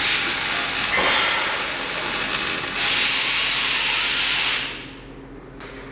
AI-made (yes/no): no